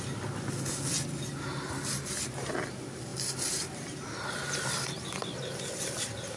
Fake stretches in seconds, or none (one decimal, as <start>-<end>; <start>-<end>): none